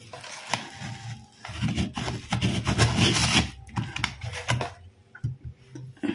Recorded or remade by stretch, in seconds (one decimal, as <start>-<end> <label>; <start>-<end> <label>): 0.0-6.1 recorded